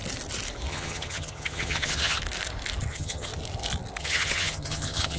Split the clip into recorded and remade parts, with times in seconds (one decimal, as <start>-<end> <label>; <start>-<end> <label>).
0.0-0.7 recorded; 0.7-2.2 remade; 2.2-2.9 recorded; 2.9-3.3 remade; 3.3-4.0 recorded; 4.0-5.2 remade